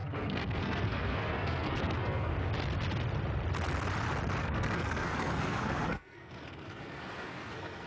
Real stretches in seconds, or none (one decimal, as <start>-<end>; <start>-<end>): 2.3-4.4